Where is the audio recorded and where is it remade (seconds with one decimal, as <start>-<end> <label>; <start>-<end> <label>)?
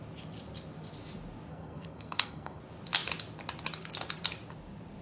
0.0-1.5 recorded; 1.5-2.6 remade; 2.6-5.0 recorded